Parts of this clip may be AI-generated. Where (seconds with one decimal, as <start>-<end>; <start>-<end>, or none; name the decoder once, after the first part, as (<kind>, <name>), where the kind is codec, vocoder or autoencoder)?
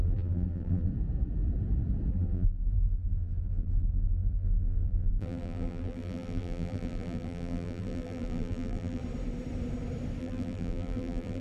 0.0-0.9 (vocoder, BigVGAN v2); 2.1-9.0; 10.2-11.4